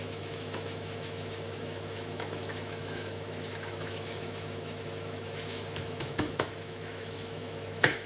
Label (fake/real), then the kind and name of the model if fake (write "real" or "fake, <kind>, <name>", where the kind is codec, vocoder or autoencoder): fake, autoencoder, DAC-VAE